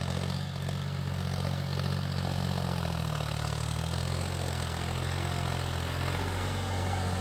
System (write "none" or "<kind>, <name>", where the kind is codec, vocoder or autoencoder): codec, SNAC